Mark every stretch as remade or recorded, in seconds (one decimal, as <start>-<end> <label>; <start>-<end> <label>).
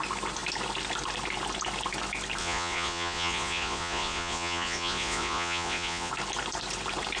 0.0-2.4 recorded; 2.4-6.1 remade; 6.1-7.2 recorded